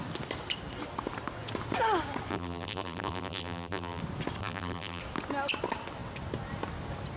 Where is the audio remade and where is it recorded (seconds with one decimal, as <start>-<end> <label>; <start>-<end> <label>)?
0.0-2.3 recorded; 2.3-4.0 remade; 4.0-4.4 recorded; 4.4-5.0 remade; 5.0-7.2 recorded